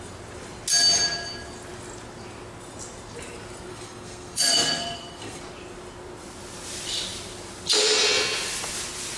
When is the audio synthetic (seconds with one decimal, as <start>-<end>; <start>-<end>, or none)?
3.7-5.4